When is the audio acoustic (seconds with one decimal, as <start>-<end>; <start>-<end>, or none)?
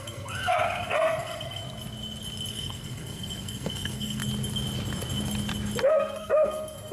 1.6-2.5; 4.2-5.9